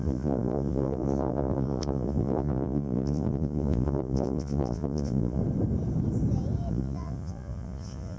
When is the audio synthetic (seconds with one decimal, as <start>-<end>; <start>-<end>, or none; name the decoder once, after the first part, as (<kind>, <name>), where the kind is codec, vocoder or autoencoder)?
0.0-5.4 (vocoder, Vocos); 6.7-8.2